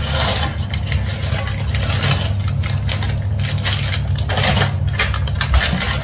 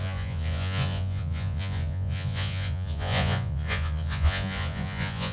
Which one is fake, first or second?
second